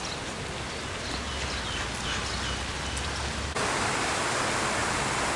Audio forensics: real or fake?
real